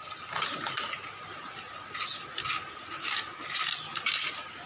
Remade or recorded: recorded